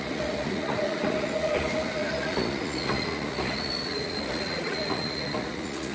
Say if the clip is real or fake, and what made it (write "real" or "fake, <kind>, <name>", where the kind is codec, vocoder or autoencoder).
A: fake, vocoder, Vocos